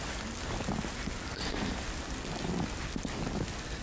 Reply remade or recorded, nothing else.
recorded